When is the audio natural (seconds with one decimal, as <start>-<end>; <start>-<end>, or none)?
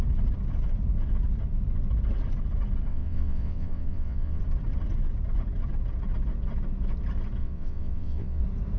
0.0-2.9; 4.4-7.4; 8.4-8.8